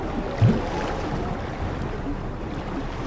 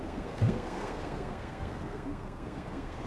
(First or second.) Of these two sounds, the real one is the first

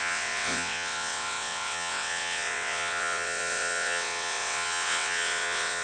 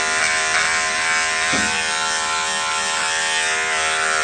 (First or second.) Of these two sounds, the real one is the second